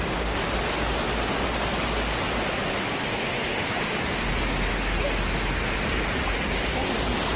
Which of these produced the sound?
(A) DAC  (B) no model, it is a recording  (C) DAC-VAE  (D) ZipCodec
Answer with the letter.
B